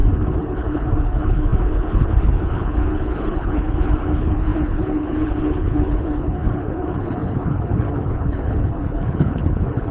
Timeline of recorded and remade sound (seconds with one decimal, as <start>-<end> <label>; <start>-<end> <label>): 0.0-9.9 remade